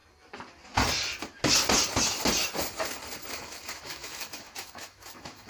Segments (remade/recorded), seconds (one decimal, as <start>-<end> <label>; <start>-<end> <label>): 0.0-3.3 recorded; 3.3-5.5 remade